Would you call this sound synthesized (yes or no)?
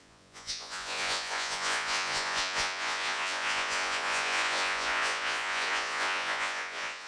yes